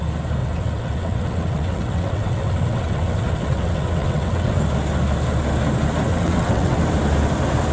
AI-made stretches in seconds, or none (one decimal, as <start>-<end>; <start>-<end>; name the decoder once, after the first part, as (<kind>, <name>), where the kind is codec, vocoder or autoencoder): 0.4-4.6 (vocoder, WaveNeXt); 6.1-6.8